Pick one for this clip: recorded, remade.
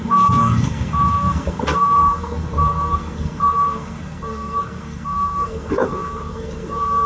remade